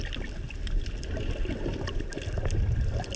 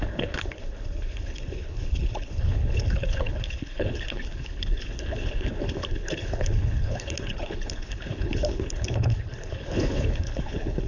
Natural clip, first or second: first